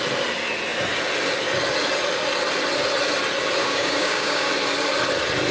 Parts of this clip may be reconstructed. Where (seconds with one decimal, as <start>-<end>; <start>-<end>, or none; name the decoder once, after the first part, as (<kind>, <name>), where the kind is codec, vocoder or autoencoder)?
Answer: 3.6-4.5 (codec, DAC)